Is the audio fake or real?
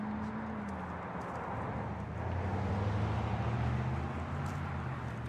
real